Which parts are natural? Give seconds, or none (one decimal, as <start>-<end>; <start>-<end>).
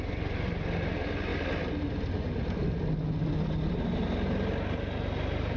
0.0-5.6